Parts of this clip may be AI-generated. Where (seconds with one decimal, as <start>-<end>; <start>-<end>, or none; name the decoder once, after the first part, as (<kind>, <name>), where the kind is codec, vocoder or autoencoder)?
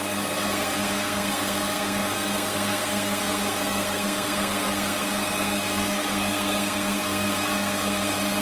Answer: 0.0-8.4 (codec, SNAC)